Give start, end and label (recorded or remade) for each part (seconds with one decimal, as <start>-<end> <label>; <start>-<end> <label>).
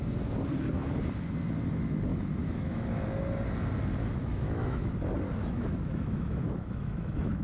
0.0-2.1 recorded; 2.1-2.9 remade; 2.9-4.2 recorded; 4.2-4.9 remade; 4.9-5.4 recorded; 5.4-7.4 remade